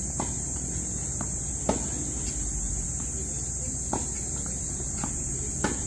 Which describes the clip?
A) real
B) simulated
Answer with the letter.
A